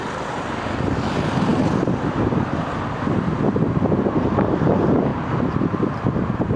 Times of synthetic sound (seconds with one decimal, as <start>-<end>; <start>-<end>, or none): none